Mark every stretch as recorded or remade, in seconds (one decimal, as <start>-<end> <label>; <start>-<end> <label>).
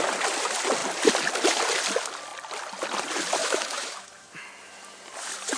0.0-3.4 recorded; 3.4-4.4 remade; 4.4-5.6 recorded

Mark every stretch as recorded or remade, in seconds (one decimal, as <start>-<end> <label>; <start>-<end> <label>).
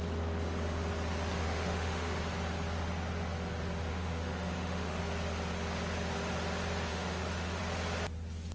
0.0-1.4 recorded; 1.4-2.2 remade; 2.2-3.9 recorded; 3.9-5.0 remade; 5.0-6.9 recorded; 6.9-7.6 remade; 7.6-8.5 recorded